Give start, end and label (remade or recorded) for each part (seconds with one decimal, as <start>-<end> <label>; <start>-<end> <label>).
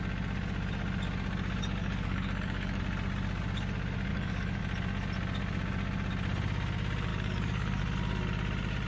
0.0-1.8 recorded; 1.8-2.8 remade; 2.8-4.1 recorded; 4.1-4.6 remade; 4.6-7.1 recorded; 7.1-7.8 remade; 7.8-8.9 recorded